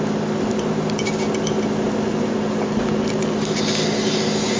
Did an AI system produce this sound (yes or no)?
no